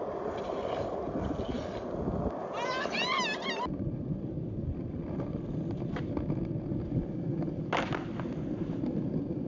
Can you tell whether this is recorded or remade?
recorded